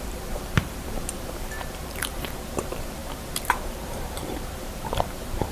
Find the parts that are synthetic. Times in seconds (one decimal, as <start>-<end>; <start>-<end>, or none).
0.0-5.5